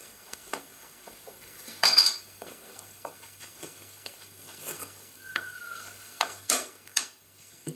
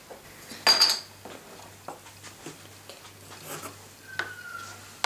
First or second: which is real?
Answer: second